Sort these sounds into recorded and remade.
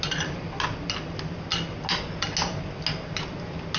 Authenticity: recorded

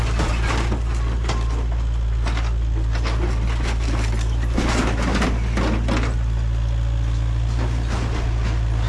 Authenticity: recorded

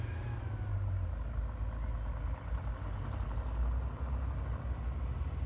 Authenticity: recorded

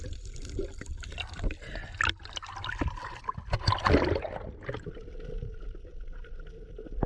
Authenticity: recorded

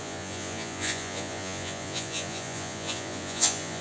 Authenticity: remade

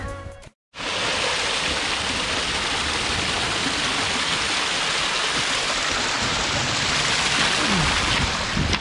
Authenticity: recorded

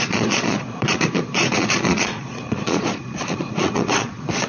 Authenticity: remade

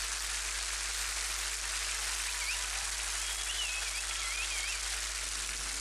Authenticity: recorded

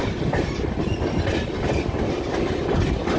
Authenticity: recorded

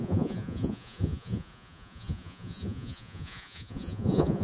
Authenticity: remade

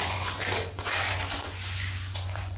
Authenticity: remade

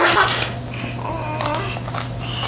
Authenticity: recorded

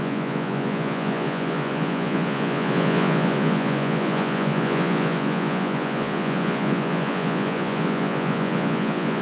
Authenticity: remade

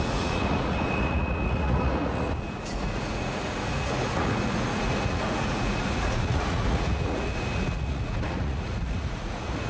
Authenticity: remade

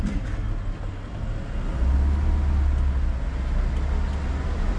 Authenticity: recorded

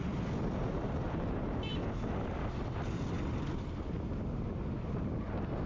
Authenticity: recorded